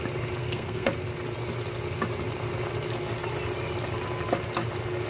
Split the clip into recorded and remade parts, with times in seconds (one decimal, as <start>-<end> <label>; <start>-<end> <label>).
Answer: 0.0-0.4 recorded; 0.4-0.9 remade; 0.9-5.1 recorded